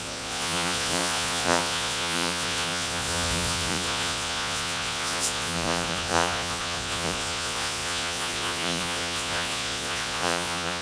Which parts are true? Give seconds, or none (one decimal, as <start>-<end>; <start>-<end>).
none